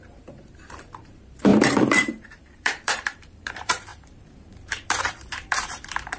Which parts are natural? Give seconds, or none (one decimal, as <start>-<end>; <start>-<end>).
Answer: none